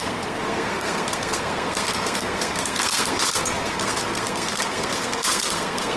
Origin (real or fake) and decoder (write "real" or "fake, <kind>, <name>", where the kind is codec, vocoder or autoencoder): fake, codec, SNAC